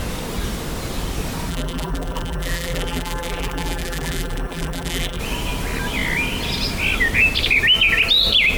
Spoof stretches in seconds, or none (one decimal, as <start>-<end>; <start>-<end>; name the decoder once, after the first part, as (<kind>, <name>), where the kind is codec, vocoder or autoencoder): 1.5-5.2 (vocoder, BigVGAN v2)

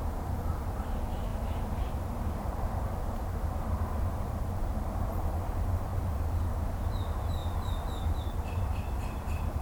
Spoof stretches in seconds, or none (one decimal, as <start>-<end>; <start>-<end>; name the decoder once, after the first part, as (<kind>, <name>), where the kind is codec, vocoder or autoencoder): 0.0-1.3 (vocoder, BigVGAN v2); 1.9-7.4; 8.2-9.6

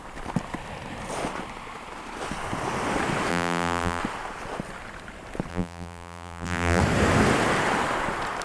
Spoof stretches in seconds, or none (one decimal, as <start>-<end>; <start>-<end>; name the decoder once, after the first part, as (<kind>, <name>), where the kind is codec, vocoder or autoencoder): 3.3-4.0 (vocoder, BigVGAN v2); 5.5-6.8

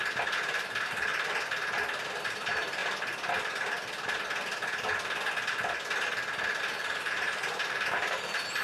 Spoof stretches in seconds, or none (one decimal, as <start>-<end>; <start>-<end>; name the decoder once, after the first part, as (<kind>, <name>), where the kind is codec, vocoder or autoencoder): 0.0-1.1 (vocoder, BigVGAN v2); 2.2-2.8; 6.6-8.6

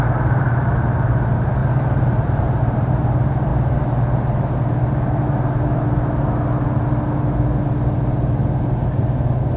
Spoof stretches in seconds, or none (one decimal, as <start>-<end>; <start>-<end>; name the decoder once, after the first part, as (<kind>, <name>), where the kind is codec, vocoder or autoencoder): 0.0-3.5 (vocoder, BigVGAN v2); 8.6-9.6

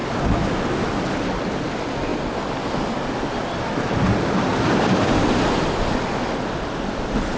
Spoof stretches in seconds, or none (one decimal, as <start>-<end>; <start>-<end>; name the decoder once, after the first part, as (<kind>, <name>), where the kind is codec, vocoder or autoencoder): 4.5-5.0 (vocoder, BigVGAN v2)

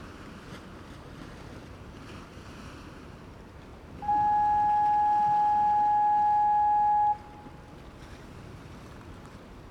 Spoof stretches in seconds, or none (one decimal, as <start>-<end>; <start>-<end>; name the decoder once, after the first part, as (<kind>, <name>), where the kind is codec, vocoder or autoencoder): 0.0-3.7 (vocoder, BigVGAN v2); 8.2-9.7

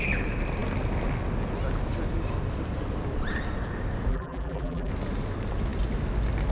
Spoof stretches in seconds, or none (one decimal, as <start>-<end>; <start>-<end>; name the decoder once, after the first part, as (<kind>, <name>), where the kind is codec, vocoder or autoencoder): 4.1-4.9 (vocoder, BigVGAN v2)